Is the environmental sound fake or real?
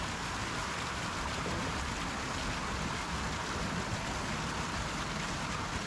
real